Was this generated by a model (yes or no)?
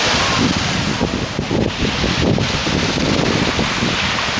no